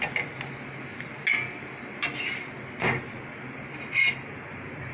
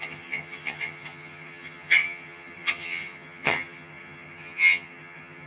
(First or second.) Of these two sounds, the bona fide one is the first